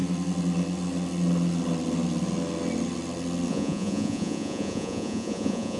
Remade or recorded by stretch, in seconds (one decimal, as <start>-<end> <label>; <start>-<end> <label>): 0.0-3.5 recorded; 3.5-5.8 remade